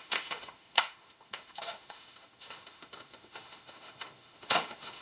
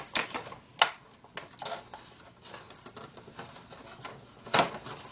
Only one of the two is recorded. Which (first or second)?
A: second